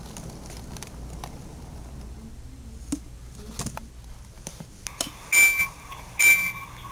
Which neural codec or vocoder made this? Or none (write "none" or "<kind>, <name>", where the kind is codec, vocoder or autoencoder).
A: none